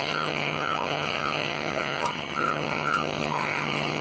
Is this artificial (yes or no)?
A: yes